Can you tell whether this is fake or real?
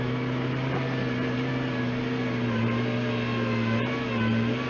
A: real